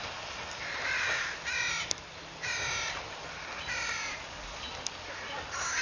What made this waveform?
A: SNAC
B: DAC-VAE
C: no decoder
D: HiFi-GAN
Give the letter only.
C